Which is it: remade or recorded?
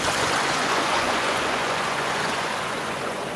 remade